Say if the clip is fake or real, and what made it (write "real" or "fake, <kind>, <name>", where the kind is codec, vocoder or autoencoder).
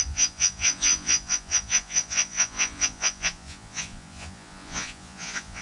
fake, vocoder, Vocos